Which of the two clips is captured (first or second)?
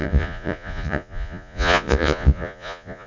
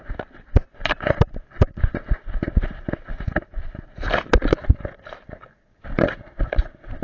second